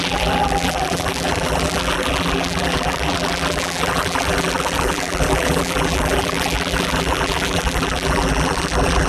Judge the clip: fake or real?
fake